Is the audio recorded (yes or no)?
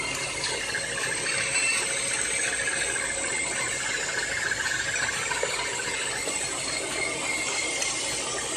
yes